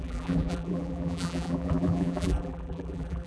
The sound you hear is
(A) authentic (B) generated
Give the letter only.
B